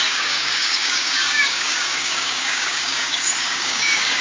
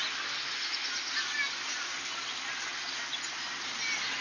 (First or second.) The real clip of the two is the second